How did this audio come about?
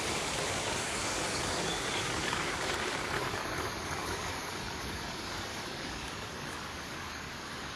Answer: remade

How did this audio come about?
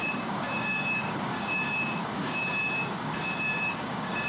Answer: remade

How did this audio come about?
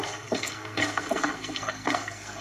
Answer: remade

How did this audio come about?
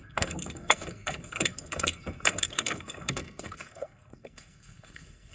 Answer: remade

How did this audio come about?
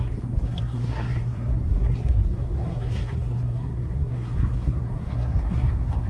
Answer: remade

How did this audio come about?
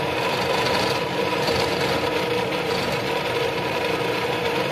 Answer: remade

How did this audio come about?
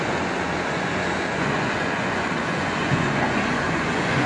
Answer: remade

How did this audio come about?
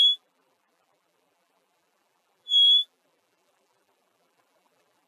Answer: remade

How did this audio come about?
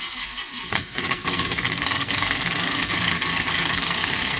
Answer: remade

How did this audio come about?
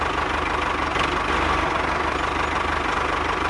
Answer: recorded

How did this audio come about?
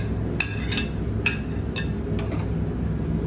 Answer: recorded